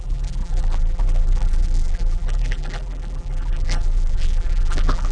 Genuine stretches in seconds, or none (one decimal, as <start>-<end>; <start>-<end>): none